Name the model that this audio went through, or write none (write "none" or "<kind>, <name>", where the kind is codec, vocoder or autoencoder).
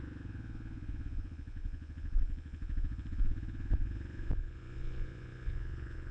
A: vocoder, Vocos